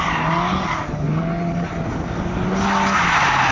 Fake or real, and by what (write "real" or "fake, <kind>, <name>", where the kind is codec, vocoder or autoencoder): real